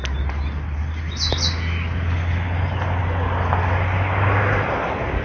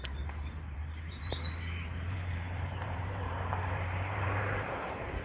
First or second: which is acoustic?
first